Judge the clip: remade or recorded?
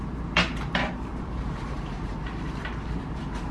remade